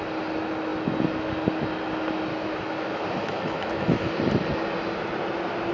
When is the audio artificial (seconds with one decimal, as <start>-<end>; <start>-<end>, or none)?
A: 2.3-4.1